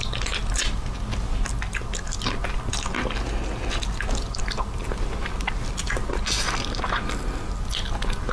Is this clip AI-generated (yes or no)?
no